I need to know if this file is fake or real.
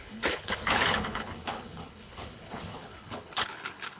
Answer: fake